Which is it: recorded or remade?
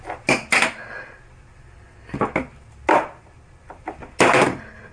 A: recorded